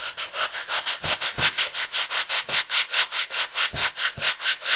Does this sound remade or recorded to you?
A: remade